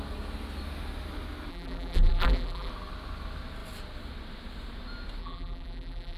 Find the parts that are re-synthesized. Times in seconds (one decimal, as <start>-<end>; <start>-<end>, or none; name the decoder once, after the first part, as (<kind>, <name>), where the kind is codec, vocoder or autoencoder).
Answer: 1.5-2.7 (vocoder, BigVGAN v2); 5.2-6.2

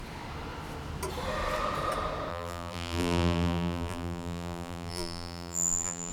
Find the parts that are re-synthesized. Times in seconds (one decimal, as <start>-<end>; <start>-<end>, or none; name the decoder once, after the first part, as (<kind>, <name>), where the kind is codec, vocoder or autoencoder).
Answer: 2.3-6.1 (vocoder, BigVGAN v2)

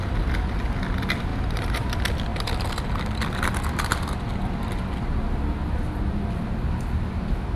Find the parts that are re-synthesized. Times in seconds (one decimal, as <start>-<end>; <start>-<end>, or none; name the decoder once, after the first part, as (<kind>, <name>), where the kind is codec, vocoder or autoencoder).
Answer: 1.3-1.9 (vocoder, BigVGAN v2)

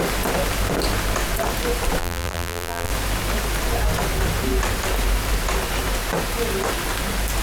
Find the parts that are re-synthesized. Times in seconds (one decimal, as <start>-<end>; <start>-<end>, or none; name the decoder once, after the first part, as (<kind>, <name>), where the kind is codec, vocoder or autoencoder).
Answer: 2.0-2.9 (vocoder, BigVGAN v2)

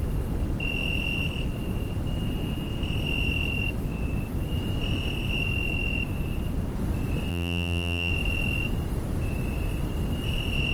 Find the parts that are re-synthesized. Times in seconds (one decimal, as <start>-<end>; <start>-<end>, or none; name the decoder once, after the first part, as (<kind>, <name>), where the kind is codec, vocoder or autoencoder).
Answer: 7.3-8.1 (vocoder, BigVGAN v2)

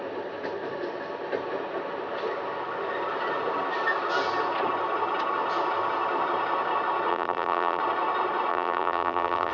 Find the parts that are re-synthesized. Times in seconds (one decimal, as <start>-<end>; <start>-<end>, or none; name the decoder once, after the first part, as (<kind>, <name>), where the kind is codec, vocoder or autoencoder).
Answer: 7.1-7.8 (vocoder, BigVGAN v2); 8.5-9.5

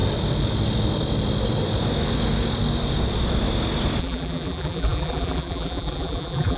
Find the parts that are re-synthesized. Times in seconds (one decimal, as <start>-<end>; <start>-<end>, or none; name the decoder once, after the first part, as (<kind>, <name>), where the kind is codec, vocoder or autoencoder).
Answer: 4.0-6.6 (vocoder, BigVGAN v2)

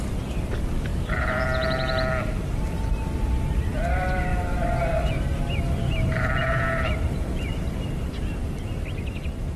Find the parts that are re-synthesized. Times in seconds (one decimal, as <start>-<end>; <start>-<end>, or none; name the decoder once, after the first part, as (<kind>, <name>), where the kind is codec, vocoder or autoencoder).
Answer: 0.9-1.4 (vocoder, BigVGAN v2); 4.3-7.6